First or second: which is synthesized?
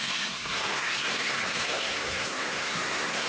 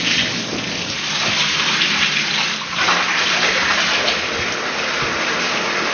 first